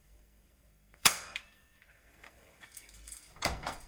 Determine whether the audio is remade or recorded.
remade